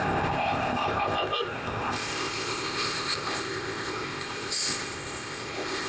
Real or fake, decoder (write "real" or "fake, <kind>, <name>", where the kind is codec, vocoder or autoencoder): fake, codec, ZipCodec